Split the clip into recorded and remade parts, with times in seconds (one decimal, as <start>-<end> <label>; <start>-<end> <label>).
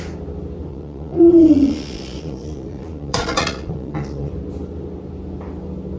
0.0-0.7 recorded; 0.7-4.3 remade; 4.3-6.0 recorded